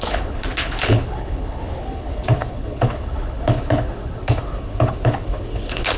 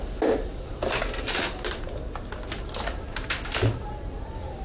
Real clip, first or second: second